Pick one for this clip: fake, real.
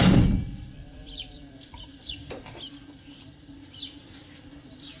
fake